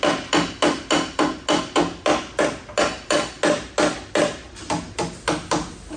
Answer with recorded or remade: recorded